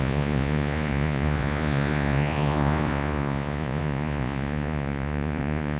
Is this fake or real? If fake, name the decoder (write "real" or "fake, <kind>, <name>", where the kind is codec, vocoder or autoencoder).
fake, vocoder, Vocos